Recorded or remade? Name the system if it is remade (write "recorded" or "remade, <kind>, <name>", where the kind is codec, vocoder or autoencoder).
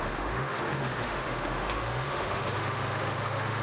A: remade, autoencoder, DAC-VAE